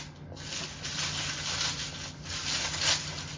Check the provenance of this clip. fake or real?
real